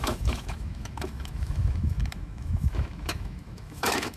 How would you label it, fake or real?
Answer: fake